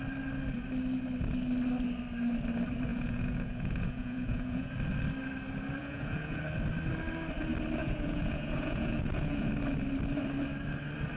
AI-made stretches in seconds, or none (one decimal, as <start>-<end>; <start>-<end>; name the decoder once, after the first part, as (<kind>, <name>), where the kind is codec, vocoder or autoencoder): 2.9-4.7 (vocoder, Vocos); 5.8-6.4; 7.8-9.5